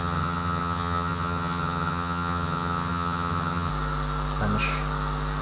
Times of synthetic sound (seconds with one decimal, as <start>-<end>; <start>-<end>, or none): 0.0-3.7